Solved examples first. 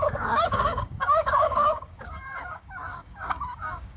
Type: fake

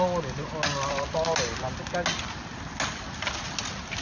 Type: real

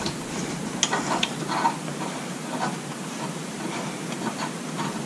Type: real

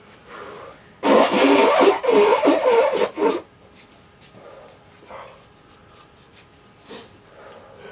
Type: real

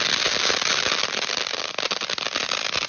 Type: real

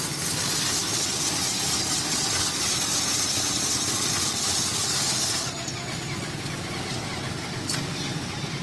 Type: real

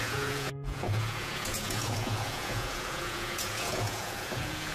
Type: fake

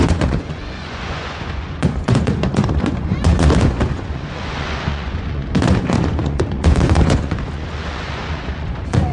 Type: fake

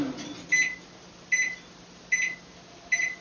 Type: real